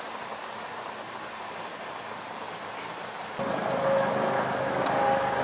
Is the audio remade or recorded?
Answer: recorded